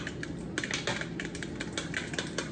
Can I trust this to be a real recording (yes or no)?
yes